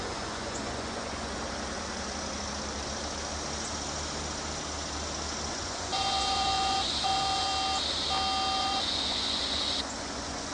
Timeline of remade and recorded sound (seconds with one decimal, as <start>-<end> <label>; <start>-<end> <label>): 0.0-1.3 remade; 1.3-5.5 recorded; 5.5-7.5 remade; 7.5-8.6 recorded; 8.6-10.5 remade